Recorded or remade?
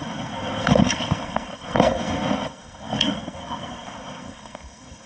remade